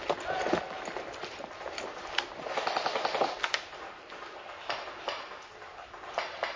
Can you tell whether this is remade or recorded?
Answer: recorded